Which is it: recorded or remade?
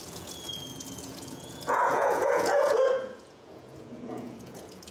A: remade